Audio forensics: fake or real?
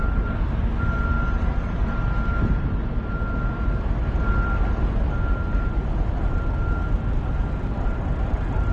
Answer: real